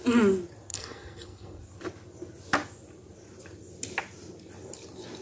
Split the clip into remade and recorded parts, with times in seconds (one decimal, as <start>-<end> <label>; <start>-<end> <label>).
0.0-0.7 recorded; 0.7-1.6 remade; 1.6-5.2 recorded